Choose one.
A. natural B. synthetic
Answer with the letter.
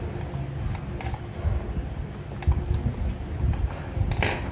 A